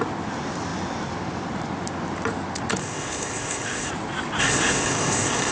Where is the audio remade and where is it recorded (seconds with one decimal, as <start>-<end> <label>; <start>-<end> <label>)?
0.0-2.8 recorded; 2.8-3.9 remade; 3.9-4.4 recorded; 4.4-5.5 remade

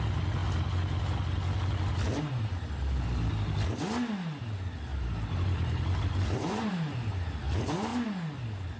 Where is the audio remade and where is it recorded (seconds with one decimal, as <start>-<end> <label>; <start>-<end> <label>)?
0.0-4.9 recorded; 4.9-6.7 remade; 6.7-8.8 recorded

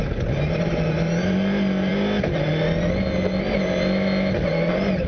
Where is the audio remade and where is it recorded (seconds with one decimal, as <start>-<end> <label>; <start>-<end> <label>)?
0.0-5.1 recorded

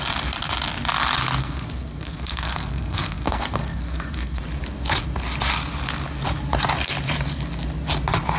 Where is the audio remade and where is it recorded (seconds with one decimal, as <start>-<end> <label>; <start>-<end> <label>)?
0.0-1.4 recorded; 1.4-4.4 remade; 4.4-8.4 recorded

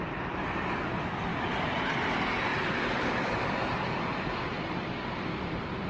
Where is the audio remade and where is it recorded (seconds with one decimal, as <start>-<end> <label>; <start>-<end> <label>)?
0.0-1.3 recorded; 1.3-2.1 remade; 2.1-2.5 recorded; 2.5-5.2 remade; 5.2-5.9 recorded

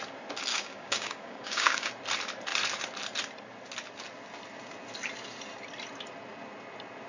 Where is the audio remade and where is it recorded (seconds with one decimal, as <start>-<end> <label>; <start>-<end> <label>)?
0.0-0.5 recorded; 0.5-1.9 remade; 1.9-7.1 recorded

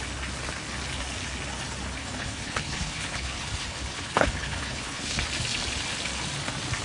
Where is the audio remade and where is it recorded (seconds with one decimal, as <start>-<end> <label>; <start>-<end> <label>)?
0.0-2.0 recorded; 2.0-5.2 remade; 5.2-6.8 recorded

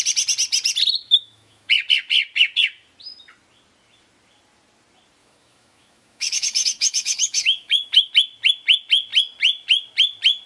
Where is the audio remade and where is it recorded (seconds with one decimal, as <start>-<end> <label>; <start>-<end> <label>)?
0.0-1.0 recorded; 1.0-1.7 remade; 1.7-5.2 recorded; 5.2-8.1 remade; 8.1-10.5 recorded